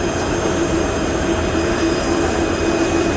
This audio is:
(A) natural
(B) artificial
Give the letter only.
B